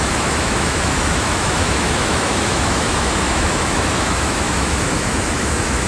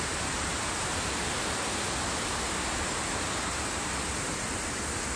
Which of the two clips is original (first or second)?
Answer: second